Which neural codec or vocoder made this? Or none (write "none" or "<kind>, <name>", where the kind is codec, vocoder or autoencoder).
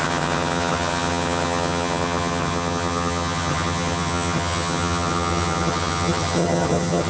vocoder, HiFi-GAN